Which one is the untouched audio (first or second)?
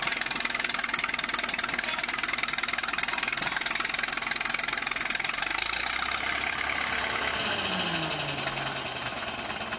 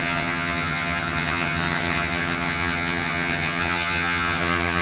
first